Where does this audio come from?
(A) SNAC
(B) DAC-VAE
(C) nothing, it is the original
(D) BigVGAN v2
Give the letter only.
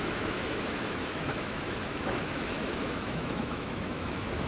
B